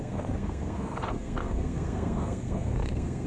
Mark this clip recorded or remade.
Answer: remade